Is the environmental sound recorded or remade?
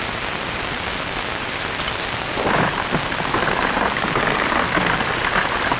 recorded